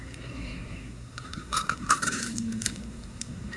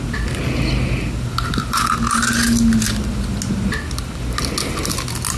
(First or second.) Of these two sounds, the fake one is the first